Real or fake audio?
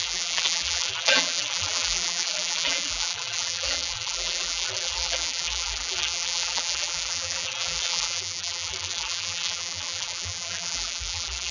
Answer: fake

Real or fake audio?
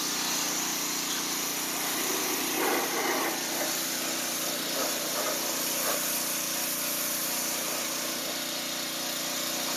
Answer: real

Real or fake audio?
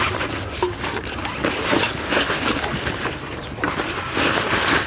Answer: real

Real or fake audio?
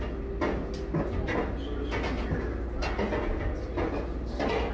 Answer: real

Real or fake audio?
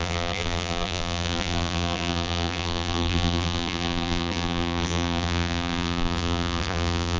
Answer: fake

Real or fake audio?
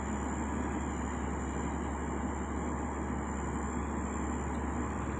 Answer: real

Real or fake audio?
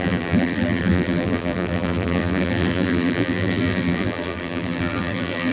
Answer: fake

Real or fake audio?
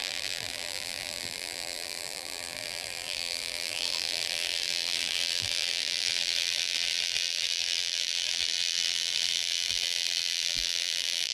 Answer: fake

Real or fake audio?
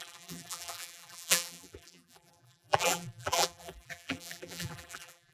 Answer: fake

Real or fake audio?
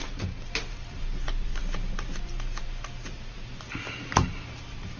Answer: fake